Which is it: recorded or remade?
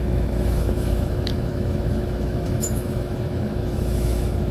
remade